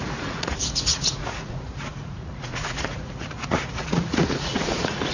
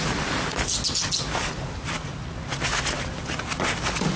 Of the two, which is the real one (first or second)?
second